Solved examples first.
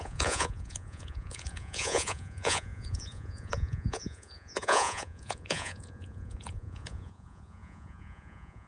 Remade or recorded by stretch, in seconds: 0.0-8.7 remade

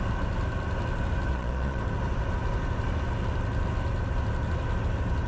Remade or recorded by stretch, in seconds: 0.0-1.3 recorded; 1.3-1.8 remade; 1.8-5.3 recorded

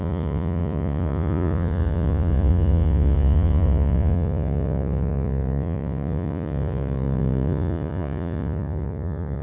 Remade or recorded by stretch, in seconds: 0.0-9.4 remade

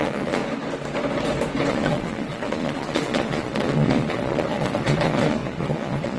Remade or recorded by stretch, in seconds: 0.0-0.4 remade; 0.4-1.7 recorded; 1.7-6.2 remade

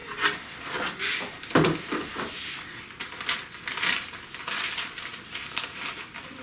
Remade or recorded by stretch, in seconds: 0.0-6.4 recorded

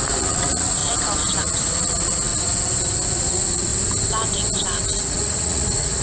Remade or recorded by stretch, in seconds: 0.0-0.8 remade; 0.8-1.4 recorded; 1.4-2.3 remade; 2.3-3.1 recorded; 3.1-3.7 remade; 3.7-5.0 recorded; 5.0-6.0 remade